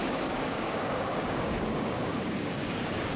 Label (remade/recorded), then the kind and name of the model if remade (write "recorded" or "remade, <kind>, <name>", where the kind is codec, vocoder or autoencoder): remade, codec, DAC